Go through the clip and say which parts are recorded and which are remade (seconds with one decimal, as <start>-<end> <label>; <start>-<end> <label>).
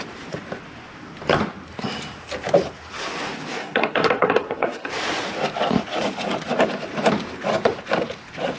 0.0-3.6 recorded; 3.6-4.9 remade; 4.9-8.6 recorded